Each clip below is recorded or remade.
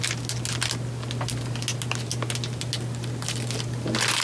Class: recorded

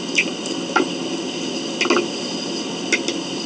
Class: recorded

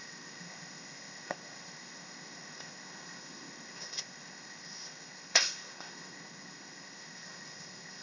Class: remade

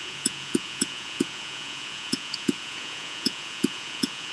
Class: remade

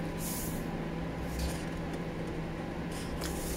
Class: recorded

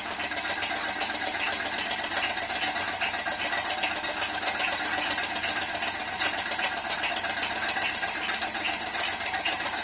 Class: recorded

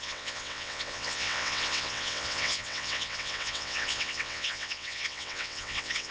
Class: remade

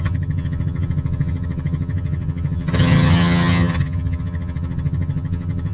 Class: remade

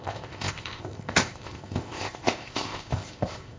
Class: remade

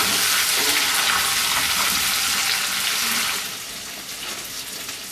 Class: recorded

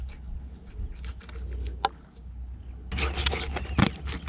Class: recorded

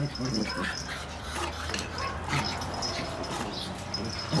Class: recorded